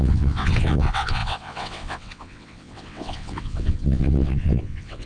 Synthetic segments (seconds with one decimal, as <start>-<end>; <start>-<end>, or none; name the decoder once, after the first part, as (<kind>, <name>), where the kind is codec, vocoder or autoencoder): 0.0-5.1 (vocoder, WaveNeXt)